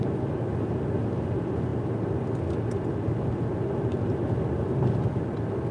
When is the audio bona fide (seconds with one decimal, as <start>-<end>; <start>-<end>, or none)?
0.0-5.7